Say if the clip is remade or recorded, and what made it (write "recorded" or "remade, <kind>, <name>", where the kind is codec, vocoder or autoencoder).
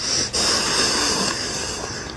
recorded